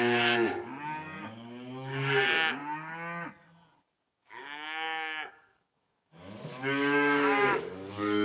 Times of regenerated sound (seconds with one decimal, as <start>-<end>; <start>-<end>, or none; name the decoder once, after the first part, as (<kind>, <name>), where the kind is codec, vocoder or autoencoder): 0.0-0.7 (codec, DAC); 1.2-2.6; 3.8-8.2